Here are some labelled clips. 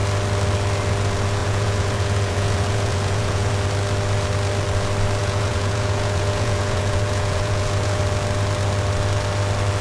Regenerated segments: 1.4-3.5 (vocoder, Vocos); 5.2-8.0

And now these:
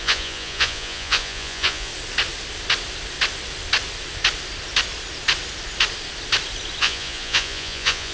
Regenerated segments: 0.0-1.9 (vocoder, Vocos); 6.8-8.1

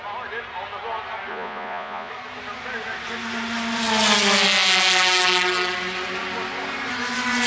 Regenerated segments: 1.3-2.1 (vocoder, Vocos)

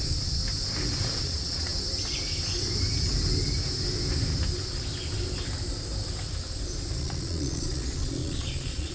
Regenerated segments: 0.0-0.4 (vocoder, Vocos); 1.2-1.7; 7.0-8.9

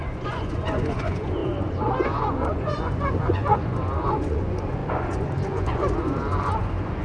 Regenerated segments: 0.0-7.0 (vocoder, Vocos)